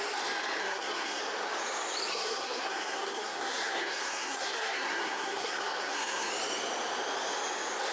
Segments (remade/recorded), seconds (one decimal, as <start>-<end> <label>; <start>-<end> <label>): 0.0-0.6 recorded; 0.6-1.2 remade; 1.2-2.1 recorded; 2.1-6.3 remade; 6.3-7.9 recorded